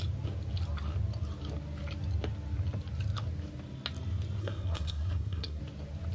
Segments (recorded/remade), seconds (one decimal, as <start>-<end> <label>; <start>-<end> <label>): 0.0-4.4 recorded; 4.4-5.6 remade; 5.6-6.1 recorded